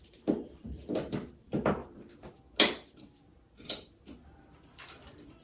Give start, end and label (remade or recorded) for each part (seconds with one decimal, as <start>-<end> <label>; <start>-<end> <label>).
0.0-1.8 remade; 1.8-2.9 recorded; 2.9-5.4 remade